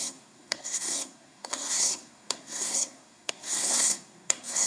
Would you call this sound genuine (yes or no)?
no